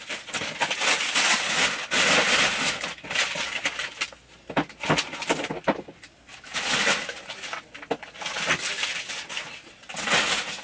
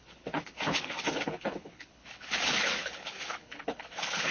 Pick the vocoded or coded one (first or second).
second